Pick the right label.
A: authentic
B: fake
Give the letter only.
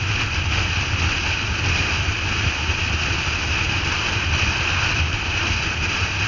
A